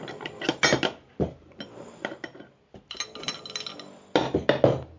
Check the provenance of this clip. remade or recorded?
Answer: recorded